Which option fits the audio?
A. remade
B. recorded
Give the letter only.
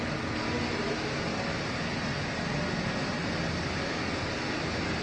B